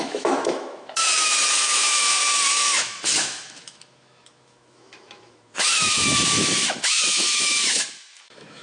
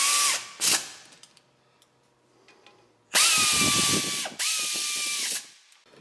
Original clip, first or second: second